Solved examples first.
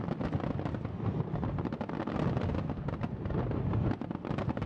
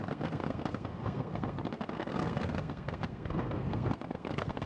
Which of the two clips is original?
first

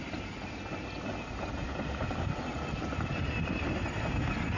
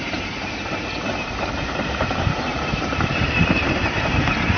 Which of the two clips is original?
first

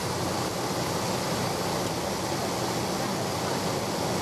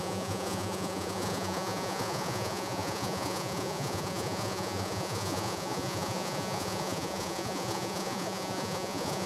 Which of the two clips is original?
first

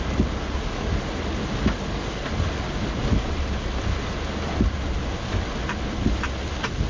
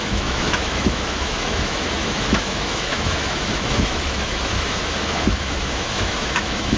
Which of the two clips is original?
first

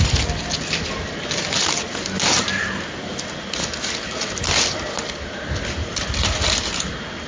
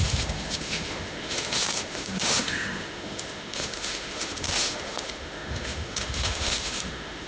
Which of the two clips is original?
first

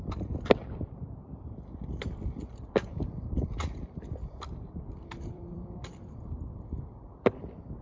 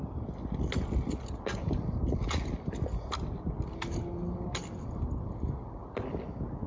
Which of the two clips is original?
second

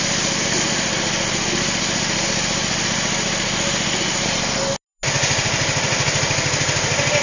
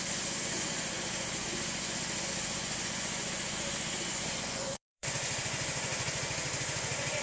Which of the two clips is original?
first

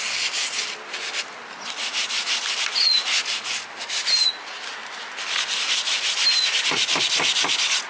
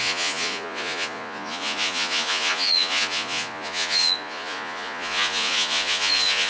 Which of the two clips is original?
first